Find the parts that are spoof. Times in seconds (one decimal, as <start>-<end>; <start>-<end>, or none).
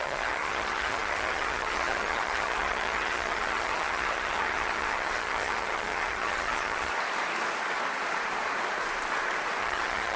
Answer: 0.0-6.9; 9.6-10.2